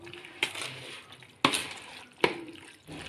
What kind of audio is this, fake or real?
real